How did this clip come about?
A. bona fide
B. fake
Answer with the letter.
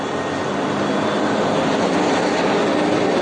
A